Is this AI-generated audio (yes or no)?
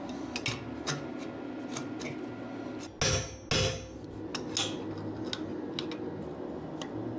no